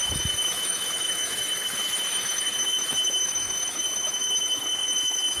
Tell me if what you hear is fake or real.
fake